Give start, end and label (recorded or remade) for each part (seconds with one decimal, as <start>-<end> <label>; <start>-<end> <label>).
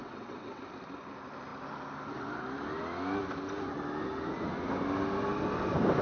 0.0-0.6 remade; 0.6-6.0 recorded